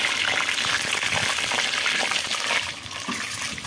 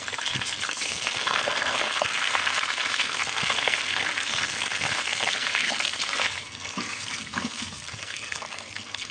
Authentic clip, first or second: first